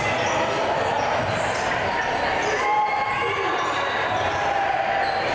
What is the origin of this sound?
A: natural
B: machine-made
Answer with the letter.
A